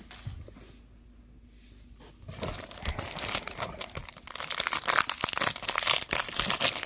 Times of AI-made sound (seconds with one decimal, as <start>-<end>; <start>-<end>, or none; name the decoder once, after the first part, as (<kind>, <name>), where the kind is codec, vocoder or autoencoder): none